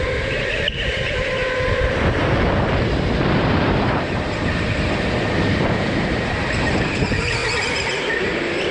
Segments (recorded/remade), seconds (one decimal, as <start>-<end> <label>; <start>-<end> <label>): 0.0-7.4 remade; 7.4-8.0 recorded; 8.0-8.7 remade